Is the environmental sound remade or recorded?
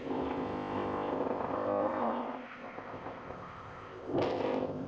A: remade